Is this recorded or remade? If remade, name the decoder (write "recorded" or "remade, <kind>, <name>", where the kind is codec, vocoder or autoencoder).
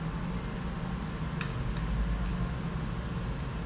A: recorded